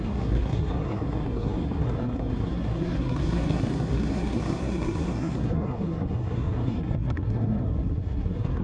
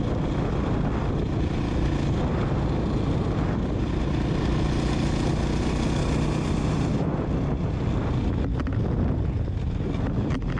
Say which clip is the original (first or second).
second